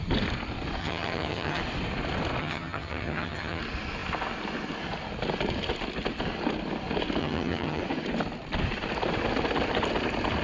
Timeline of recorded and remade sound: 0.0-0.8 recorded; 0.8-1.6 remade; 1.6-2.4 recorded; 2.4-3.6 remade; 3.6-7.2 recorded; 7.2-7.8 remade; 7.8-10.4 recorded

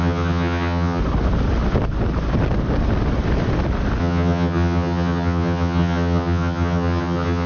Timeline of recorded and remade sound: 0.0-1.0 remade; 1.0-4.0 recorded; 4.0-7.5 remade

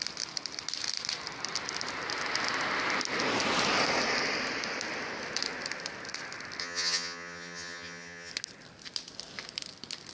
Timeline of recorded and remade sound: 0.0-6.6 recorded; 6.6-8.3 remade; 8.3-10.1 recorded

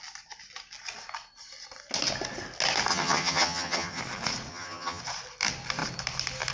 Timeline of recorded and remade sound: 0.0-2.9 recorded; 2.9-4.0 remade; 4.0-4.5 recorded; 4.5-5.0 remade; 5.0-6.5 recorded

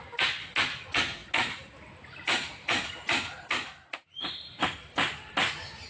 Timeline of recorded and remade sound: 0.0-5.9 recorded

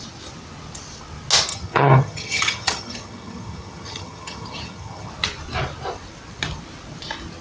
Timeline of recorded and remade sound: 0.0-1.5 recorded; 1.5-5.1 remade; 5.1-7.4 recorded

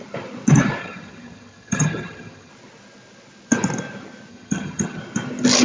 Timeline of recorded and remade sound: 0.0-0.8 recorded; 0.8-2.5 remade; 2.5-4.3 recorded; 4.3-5.0 remade; 5.0-5.6 recorded

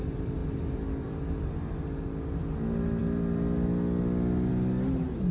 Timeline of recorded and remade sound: 0.0-5.3 recorded